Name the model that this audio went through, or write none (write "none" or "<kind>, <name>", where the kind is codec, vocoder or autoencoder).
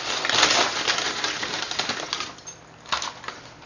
none